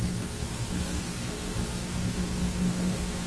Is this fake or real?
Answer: fake